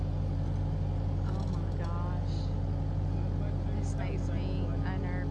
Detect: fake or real real